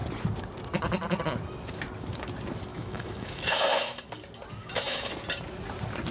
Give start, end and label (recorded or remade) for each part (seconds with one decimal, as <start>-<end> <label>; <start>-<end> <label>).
0.0-2.7 recorded; 2.7-4.0 remade; 4.0-4.6 recorded; 4.6-5.1 remade; 5.1-6.1 recorded